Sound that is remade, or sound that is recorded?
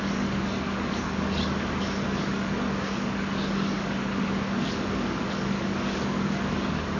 remade